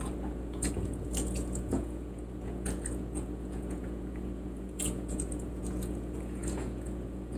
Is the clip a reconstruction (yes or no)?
yes